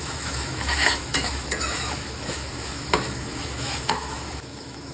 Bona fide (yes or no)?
no